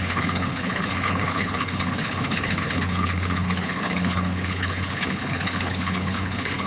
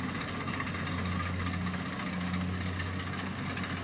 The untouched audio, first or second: second